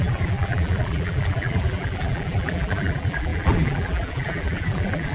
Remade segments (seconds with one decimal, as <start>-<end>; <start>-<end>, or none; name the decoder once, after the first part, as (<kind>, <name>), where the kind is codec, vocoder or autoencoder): 0.0-5.1 (vocoder, BigVGAN v2)